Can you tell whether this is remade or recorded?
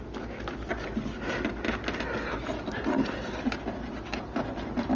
recorded